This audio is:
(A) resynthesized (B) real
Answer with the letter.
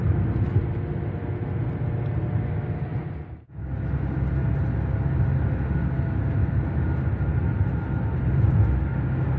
B